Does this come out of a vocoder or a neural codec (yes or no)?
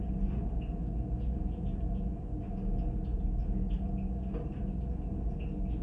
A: no